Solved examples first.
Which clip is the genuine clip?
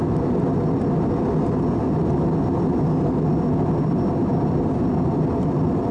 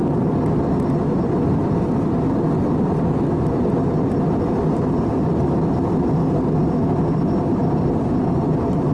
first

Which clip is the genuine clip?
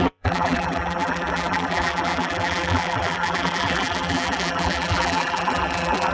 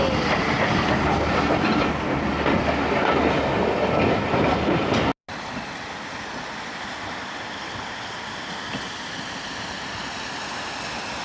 second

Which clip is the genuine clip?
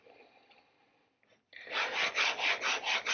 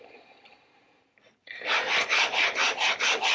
first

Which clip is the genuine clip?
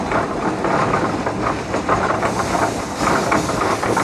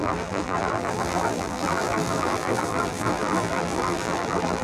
first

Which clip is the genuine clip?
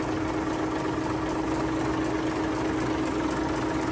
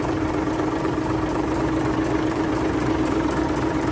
first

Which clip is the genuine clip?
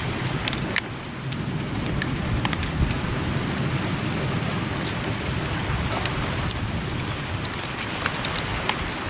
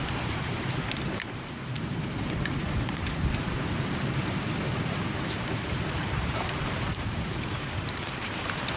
first